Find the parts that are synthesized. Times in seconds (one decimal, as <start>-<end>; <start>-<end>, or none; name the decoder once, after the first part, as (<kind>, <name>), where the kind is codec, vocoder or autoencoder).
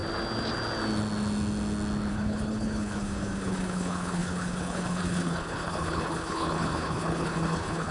2.1-7.9 (codec, HILCodec)